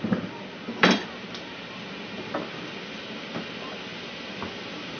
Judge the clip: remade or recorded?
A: recorded